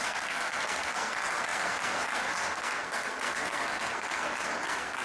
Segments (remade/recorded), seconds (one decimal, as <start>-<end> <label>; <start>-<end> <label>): 0.0-5.0 remade